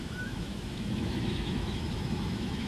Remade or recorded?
remade